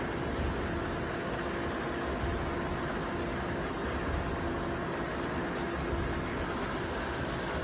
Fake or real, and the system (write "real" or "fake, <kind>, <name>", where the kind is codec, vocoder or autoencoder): real